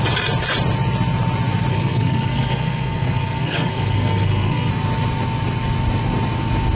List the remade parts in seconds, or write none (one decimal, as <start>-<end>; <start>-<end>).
1.7-4.7